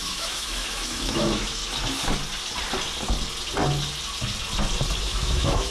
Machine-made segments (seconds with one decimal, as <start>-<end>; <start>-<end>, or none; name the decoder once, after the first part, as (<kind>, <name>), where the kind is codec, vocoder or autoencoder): 0.0-1.6 (autoencoder, DAC-VAE); 5.0-5.7